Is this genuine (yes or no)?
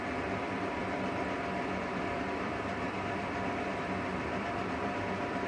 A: no